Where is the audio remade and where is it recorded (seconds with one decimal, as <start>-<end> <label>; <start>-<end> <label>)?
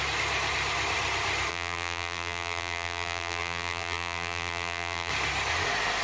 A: 0.0-1.5 recorded; 1.5-5.1 remade; 5.1-6.0 recorded